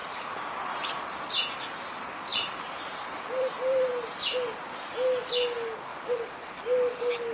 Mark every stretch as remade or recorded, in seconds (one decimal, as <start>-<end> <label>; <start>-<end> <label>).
0.0-2.3 recorded; 2.3-3.9 remade; 3.9-5.9 recorded; 5.9-6.6 remade; 6.6-7.3 recorded